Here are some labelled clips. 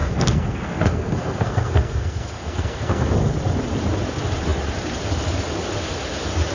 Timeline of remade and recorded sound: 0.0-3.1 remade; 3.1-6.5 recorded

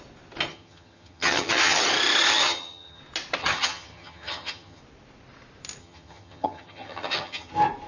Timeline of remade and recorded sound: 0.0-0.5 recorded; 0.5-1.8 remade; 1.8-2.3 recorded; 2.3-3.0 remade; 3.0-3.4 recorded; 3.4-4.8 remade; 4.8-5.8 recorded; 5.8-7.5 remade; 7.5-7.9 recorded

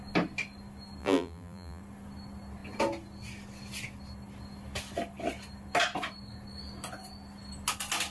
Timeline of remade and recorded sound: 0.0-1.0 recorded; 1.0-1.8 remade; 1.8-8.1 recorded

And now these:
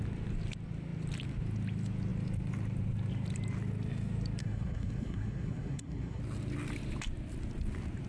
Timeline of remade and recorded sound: 0.0-4.4 recorded; 4.4-6.2 remade; 6.2-8.1 recorded

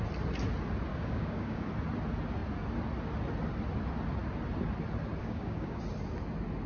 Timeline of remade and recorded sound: 0.0-0.9 recorded; 0.9-1.7 remade; 1.7-5.2 recorded; 5.2-5.8 remade; 5.8-6.7 recorded

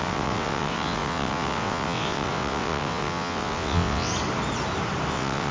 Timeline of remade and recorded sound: 0.0-4.1 remade; 4.1-5.1 recorded; 5.1-5.5 remade